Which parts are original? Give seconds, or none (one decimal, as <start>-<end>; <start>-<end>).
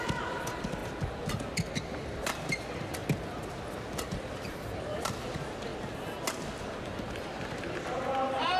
0.0-8.6